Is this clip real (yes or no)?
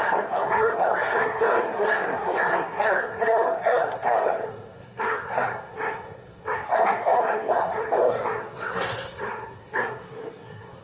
no